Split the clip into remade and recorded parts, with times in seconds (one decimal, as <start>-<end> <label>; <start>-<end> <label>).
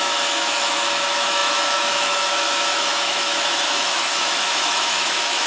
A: 0.0-5.5 remade